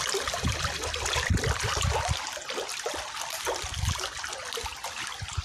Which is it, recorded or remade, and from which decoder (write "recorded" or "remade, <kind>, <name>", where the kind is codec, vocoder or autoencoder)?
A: recorded